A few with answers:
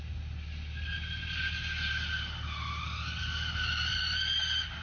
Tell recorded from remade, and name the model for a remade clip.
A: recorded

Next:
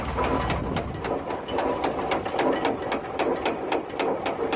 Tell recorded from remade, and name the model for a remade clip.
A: recorded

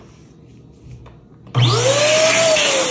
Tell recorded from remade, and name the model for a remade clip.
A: recorded